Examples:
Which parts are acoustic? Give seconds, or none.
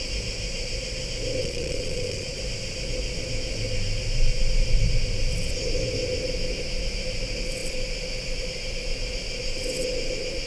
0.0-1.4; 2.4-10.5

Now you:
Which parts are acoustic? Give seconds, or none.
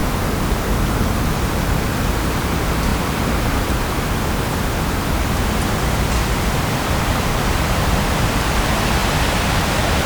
0.0-1.6; 2.9-7.0; 9.0-10.1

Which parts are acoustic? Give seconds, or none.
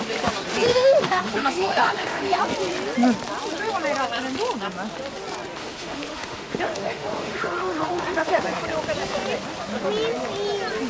0.0-0.7; 2.4-5.6; 8.4-10.9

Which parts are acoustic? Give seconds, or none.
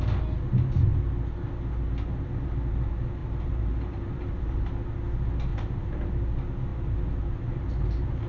0.0-3.2; 4.7-5.5; 6.1-6.7